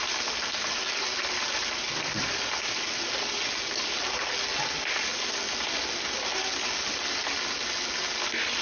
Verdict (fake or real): real